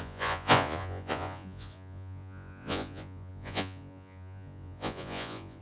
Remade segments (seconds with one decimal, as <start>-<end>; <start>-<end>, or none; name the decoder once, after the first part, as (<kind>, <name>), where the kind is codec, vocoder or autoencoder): 0.0-5.6 (vocoder, Vocos)